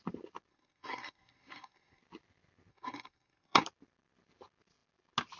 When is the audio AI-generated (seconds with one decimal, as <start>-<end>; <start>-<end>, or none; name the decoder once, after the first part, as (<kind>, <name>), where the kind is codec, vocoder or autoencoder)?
0.5-2.0 (codec, SNAC); 2.7-3.6